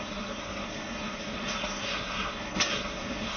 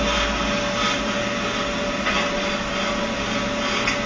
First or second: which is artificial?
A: first